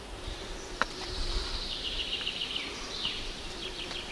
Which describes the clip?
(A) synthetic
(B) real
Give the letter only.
A